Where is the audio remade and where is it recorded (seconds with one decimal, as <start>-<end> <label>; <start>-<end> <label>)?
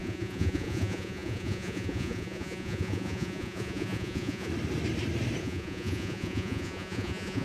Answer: 0.0-4.5 remade; 4.5-5.4 recorded; 5.4-7.4 remade